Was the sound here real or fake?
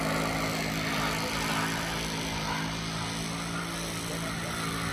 real